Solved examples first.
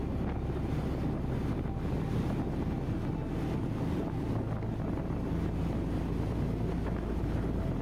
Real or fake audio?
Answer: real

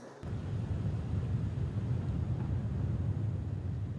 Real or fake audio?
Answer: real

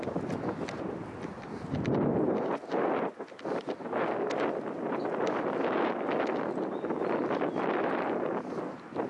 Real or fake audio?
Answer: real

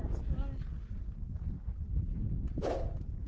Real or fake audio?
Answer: real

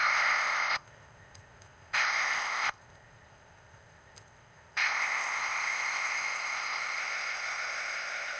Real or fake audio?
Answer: fake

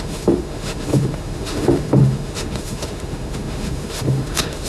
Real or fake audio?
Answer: fake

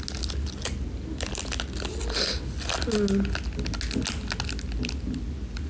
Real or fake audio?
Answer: real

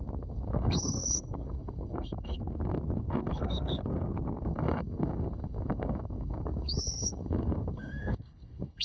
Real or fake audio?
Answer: fake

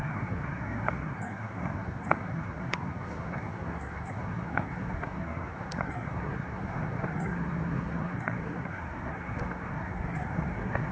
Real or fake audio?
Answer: fake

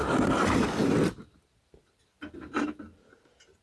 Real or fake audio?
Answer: real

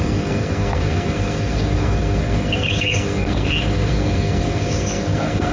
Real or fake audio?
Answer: fake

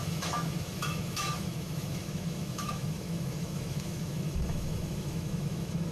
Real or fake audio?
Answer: fake